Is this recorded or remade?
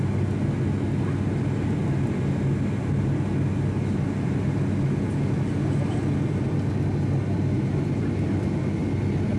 recorded